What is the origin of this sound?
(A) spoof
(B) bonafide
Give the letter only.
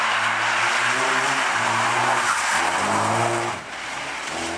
B